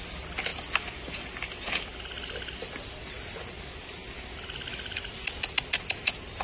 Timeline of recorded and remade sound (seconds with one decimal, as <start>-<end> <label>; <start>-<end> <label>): 0.0-6.4 recorded